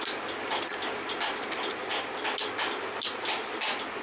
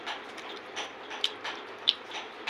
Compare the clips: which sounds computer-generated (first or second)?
second